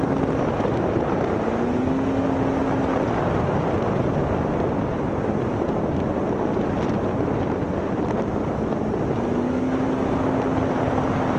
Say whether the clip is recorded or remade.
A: recorded